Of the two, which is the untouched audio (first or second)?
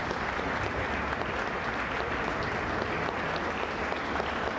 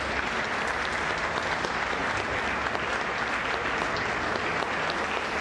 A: second